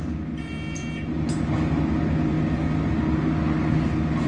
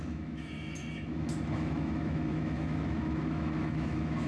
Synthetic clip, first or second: second